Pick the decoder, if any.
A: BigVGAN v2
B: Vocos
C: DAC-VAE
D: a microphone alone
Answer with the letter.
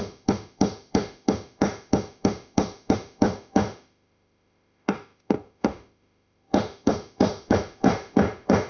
C